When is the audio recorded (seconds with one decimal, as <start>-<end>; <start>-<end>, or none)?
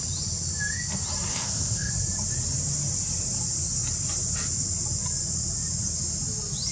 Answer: 0.0-1.3; 1.9-6.7